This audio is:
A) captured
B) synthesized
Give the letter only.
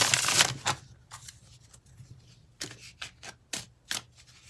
A